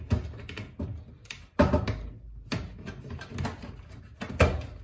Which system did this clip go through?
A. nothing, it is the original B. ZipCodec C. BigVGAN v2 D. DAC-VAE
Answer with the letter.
A